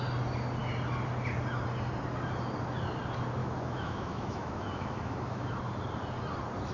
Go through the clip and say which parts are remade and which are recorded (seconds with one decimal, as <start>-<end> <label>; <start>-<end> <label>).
0.0-3.4 recorded; 3.4-5.5 remade; 5.5-6.7 recorded